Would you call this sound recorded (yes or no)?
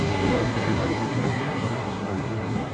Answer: no